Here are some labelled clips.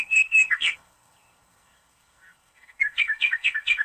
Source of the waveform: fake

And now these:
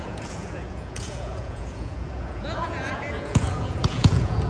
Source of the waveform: fake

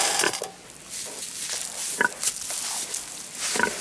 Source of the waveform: real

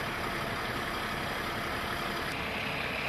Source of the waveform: real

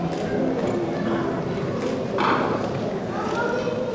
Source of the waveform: real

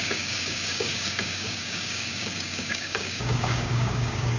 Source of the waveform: fake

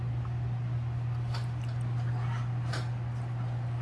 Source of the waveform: real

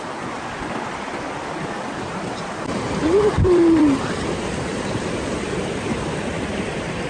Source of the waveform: fake